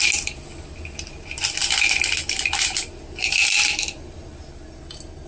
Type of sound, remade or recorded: recorded